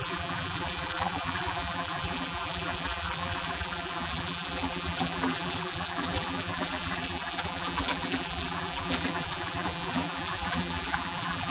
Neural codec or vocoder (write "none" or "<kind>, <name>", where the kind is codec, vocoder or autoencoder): vocoder, BigVGAN v2